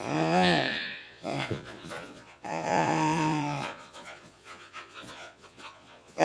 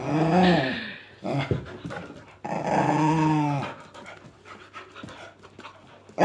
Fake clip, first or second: first